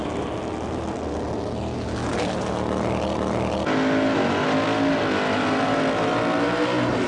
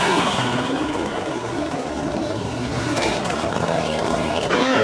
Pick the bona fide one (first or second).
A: first